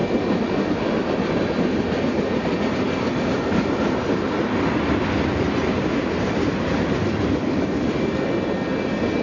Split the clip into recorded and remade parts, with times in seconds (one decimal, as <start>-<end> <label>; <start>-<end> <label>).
0.0-9.2 recorded